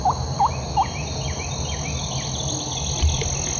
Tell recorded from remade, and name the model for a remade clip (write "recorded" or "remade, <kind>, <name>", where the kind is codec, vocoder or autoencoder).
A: recorded